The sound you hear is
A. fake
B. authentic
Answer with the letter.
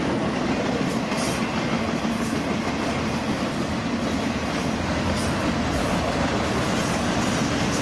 B